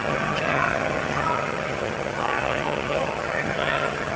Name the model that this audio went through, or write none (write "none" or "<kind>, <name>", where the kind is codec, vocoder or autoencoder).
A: vocoder, HiFi-GAN